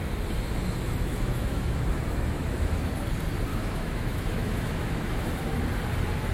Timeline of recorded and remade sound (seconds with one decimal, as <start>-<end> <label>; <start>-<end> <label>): 0.0-0.6 recorded; 0.6-2.9 remade; 2.9-3.5 recorded; 3.5-5.6 remade; 5.6-6.3 recorded